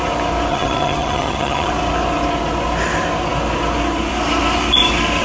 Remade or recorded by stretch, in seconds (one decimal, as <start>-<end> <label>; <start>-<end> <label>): 0.0-0.5 recorded; 0.5-1.7 remade; 1.7-5.2 recorded